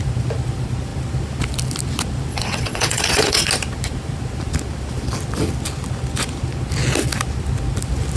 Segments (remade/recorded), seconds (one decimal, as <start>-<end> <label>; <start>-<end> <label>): 0.0-2.3 recorded; 2.3-3.5 remade; 3.5-8.2 recorded